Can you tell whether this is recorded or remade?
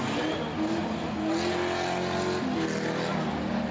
recorded